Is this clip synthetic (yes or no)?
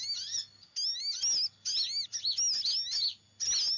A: no